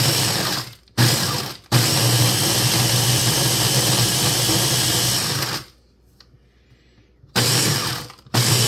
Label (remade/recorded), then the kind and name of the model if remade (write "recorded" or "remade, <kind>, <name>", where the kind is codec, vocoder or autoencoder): recorded